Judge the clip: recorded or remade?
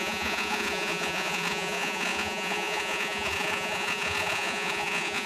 remade